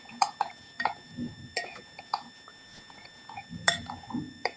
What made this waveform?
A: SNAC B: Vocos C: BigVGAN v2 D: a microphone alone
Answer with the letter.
B